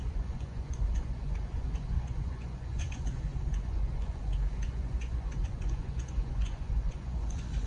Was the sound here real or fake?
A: fake